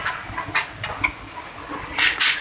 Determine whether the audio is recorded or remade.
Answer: recorded